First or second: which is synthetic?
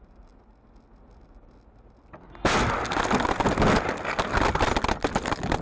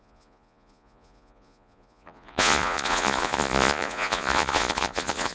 second